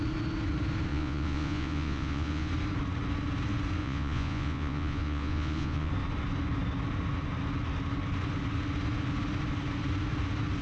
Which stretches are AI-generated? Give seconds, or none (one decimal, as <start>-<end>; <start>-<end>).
0.9-2.5; 3.8-5.9